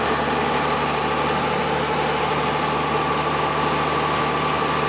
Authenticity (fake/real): real